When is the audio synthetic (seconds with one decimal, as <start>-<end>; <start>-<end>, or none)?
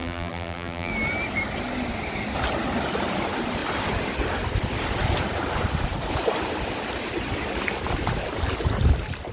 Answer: 0.0-0.9